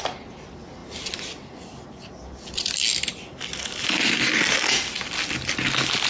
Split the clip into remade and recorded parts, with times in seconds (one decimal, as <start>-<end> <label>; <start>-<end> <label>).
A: 0.0-6.1 recorded